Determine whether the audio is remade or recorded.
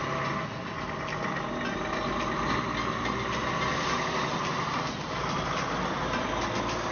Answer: recorded